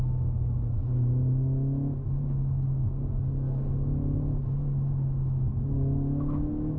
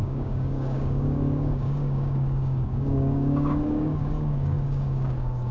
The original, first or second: first